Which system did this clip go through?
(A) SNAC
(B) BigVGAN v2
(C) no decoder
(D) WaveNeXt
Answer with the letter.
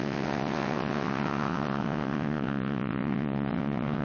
D